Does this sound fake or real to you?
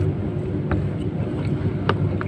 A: real